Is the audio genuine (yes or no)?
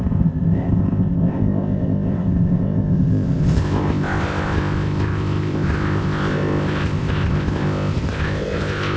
no